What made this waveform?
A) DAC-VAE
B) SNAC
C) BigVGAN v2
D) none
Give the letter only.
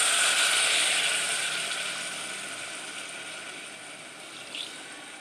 D